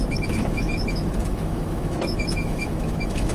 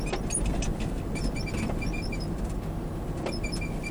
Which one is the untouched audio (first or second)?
second